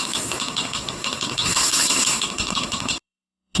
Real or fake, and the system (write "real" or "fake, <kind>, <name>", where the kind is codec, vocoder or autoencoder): fake, codec, SNAC